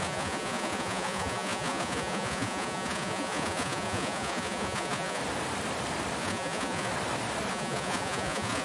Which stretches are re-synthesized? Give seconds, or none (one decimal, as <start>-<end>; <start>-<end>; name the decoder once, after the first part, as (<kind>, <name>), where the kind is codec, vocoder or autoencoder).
0.0-5.2 (vocoder, Vocos); 6.2-6.9; 7.5-8.6